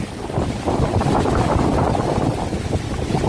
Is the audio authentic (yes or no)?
yes